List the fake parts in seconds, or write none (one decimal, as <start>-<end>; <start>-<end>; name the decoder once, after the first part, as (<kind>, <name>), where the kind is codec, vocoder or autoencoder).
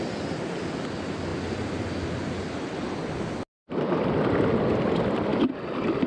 none